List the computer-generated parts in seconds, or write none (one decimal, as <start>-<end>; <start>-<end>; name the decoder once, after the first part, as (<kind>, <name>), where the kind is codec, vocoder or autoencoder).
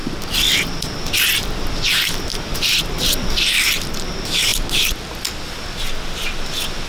2.3-3.9 (vocoder, BigVGAN v2)